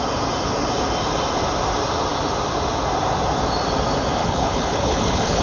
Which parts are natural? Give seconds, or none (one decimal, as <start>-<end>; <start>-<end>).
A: 0.0-4.2

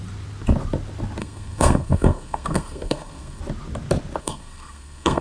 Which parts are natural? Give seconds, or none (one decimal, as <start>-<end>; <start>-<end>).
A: 0.0-1.2; 3.4-4.2

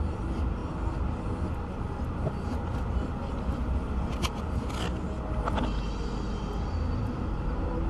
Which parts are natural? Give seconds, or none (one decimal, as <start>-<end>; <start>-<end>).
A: 0.0-7.9

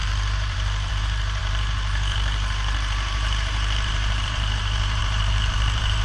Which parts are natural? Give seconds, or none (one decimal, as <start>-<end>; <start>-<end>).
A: none